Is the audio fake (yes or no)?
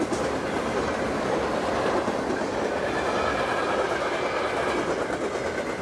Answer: no